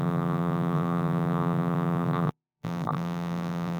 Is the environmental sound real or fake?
fake